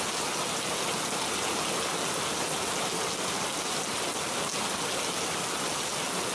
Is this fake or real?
real